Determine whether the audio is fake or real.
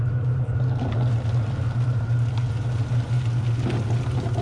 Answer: real